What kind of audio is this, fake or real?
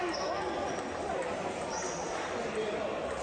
real